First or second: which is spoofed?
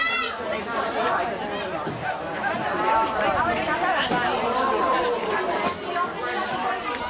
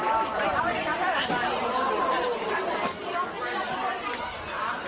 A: second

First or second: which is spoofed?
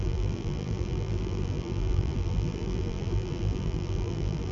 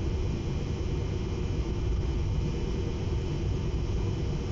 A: first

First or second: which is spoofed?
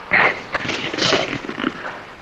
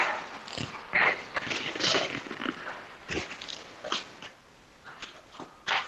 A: first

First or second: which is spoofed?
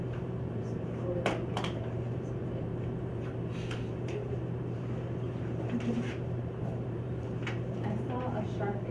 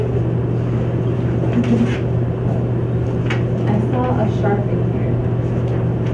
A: first